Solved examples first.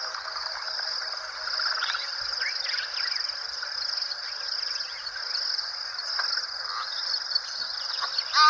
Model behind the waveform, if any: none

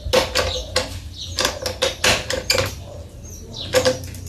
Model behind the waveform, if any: none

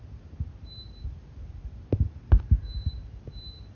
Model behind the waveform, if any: none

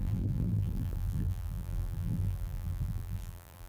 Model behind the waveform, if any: vocoder, BigVGAN v2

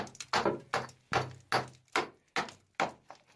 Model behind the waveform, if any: none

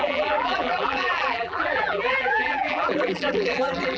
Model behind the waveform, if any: vocoder, BigVGAN v2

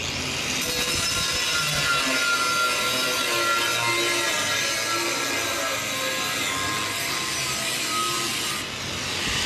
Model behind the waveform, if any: none